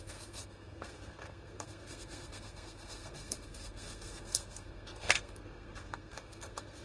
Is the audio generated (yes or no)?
yes